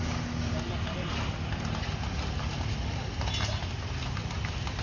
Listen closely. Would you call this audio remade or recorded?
recorded